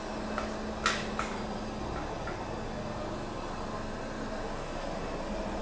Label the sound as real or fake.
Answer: real